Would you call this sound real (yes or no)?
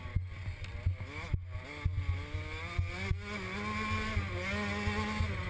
yes